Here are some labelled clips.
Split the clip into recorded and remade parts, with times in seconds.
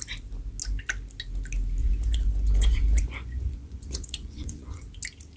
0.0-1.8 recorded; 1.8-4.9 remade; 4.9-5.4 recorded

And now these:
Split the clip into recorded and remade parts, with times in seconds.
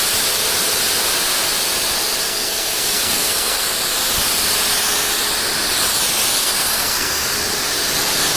0.0-2.2 recorded; 2.2-3.7 remade; 3.7-6.4 recorded; 6.4-7.3 remade; 7.3-8.4 recorded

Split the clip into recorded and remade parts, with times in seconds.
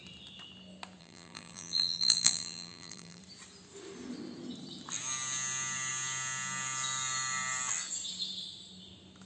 0.0-1.0 recorded; 1.0-3.2 remade; 3.2-9.3 recorded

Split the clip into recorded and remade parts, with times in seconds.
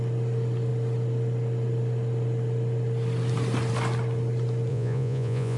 0.0-4.7 recorded; 4.7-5.6 remade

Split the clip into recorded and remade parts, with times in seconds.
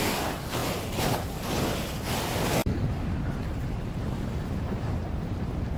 0.0-5.8 recorded